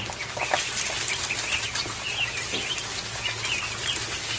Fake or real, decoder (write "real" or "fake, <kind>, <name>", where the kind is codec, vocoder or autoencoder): real